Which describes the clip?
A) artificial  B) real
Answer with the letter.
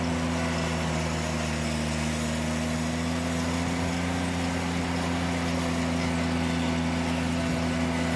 B